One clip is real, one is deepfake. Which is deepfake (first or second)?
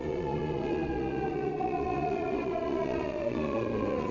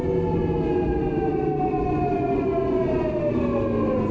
first